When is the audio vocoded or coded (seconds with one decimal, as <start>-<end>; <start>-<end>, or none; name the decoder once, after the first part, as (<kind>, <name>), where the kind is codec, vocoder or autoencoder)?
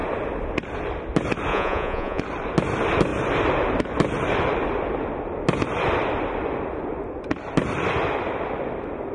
1.5-2.2 (vocoder, Vocos)